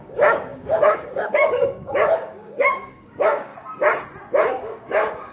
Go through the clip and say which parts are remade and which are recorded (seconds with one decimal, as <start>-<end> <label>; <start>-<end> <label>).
0.0-3.5 remade; 3.5-4.5 recorded; 4.5-5.3 remade